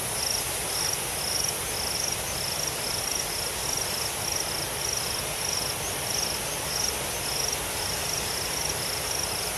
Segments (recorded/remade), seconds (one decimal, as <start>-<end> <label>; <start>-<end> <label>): 0.0-9.6 recorded